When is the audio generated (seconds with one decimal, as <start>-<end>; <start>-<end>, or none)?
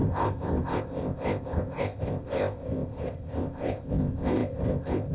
0.0-5.1